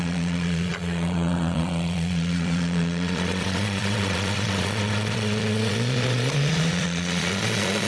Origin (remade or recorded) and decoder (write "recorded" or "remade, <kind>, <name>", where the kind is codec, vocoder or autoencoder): remade, vocoder, Vocos